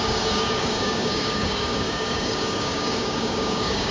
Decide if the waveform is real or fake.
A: fake